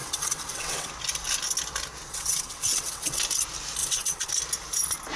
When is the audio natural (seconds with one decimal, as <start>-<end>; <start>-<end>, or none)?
0.9-2.1; 3.2-3.8; 4.3-5.2